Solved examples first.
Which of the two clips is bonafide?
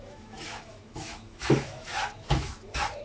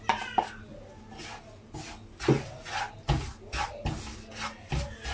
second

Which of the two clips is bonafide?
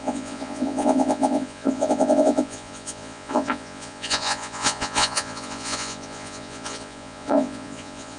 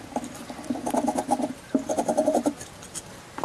second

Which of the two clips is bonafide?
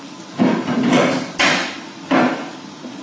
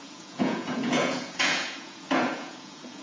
first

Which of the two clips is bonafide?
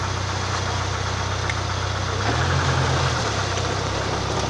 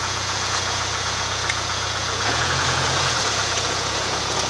first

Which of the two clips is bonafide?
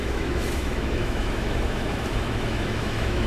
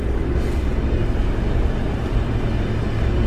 second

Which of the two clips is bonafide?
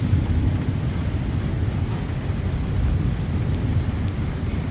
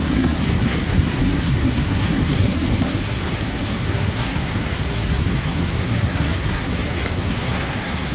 first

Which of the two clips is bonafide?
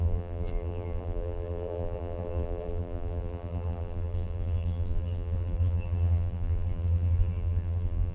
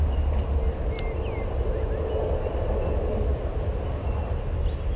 second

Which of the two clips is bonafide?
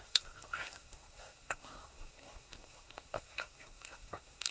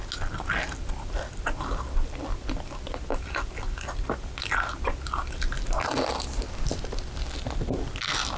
second